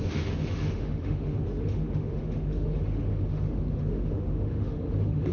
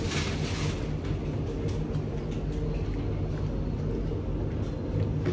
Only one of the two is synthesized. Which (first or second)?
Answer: first